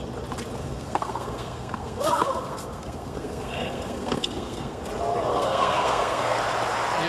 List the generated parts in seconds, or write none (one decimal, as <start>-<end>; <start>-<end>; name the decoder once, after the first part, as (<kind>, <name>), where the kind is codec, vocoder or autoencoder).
0.6-4.8 (codec, SNAC); 5.3-6.4